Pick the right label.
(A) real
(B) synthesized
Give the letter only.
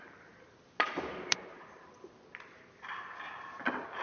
A